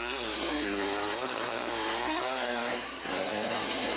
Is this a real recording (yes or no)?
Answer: no